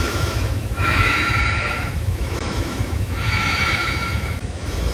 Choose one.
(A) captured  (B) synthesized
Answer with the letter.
B